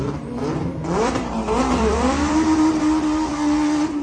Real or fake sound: fake